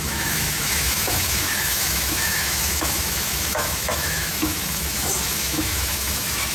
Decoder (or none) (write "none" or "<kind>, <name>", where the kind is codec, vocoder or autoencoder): autoencoder, DAC-VAE